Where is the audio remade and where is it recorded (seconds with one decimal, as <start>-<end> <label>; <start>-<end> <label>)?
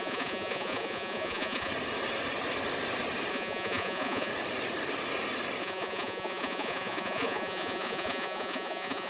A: 0.0-1.7 remade; 1.7-3.3 recorded; 3.3-4.3 remade; 4.3-5.6 recorded; 5.6-9.1 remade